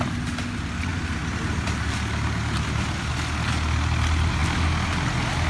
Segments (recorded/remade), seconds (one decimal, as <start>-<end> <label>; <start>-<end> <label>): 0.0-5.5 recorded